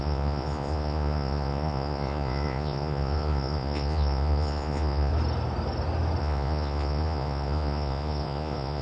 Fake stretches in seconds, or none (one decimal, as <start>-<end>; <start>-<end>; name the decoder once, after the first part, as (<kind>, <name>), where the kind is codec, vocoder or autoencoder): 0.0-5.1 (vocoder, Vocos); 6.2-8.8